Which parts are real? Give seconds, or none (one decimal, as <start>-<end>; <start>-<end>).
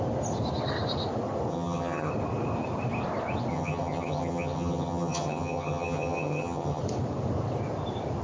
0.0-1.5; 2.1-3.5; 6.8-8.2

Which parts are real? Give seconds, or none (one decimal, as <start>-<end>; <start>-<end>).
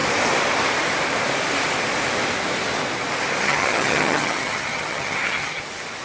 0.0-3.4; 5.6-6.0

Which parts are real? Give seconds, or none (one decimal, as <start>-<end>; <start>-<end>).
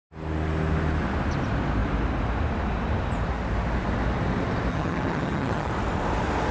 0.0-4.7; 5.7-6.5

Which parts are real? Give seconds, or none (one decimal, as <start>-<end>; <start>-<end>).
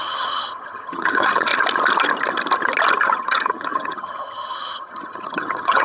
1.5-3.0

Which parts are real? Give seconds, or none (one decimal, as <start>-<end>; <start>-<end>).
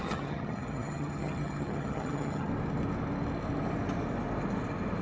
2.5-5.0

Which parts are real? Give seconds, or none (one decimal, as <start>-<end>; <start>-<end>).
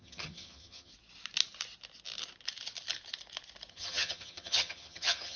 0.9-3.7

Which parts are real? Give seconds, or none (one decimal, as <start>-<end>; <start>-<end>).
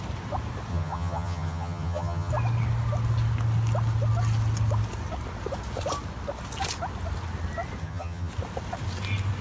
0.0-0.7; 2.3-7.8; 8.3-9.4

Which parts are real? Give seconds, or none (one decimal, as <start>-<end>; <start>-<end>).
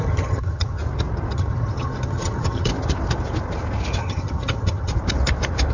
0.8-1.3; 2.7-4.0; 4.9-5.7